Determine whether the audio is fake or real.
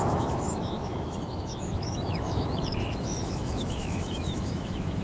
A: fake